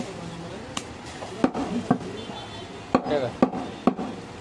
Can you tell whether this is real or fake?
real